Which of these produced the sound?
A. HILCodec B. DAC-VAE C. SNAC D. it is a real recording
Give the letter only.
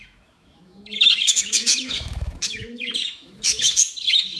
B